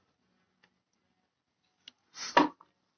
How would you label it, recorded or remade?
recorded